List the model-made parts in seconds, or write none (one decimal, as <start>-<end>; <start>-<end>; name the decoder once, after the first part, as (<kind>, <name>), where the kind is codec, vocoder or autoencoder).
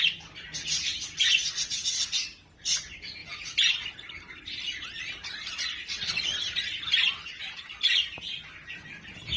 3.2-3.7 (vocoder, BigVGAN v2); 4.7-6.8; 8.6-9.4